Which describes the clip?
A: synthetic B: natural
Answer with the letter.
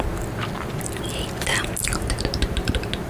A